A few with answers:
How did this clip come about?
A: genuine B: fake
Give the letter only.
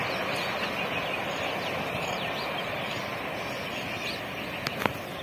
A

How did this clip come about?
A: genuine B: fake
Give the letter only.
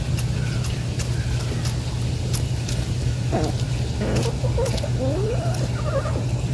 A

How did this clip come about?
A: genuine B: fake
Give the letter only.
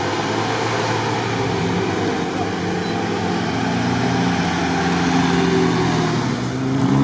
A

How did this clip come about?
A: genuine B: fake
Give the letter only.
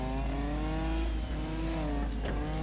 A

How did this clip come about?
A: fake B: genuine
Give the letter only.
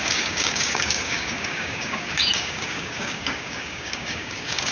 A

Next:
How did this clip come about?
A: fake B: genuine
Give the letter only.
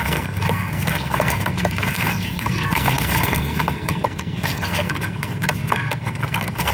A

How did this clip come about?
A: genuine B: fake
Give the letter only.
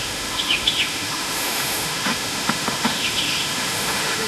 B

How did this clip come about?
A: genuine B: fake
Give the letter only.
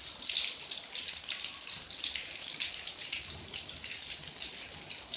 A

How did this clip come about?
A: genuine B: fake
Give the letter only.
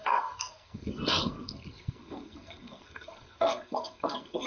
B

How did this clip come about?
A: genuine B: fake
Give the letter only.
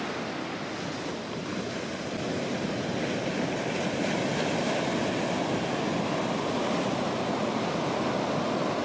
A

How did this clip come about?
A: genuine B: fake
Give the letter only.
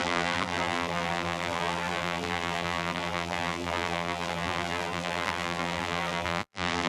B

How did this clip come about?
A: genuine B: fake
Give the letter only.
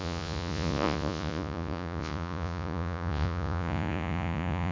B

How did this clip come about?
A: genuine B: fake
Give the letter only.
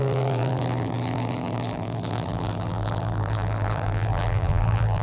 B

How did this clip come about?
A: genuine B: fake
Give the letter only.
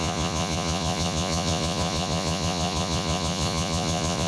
B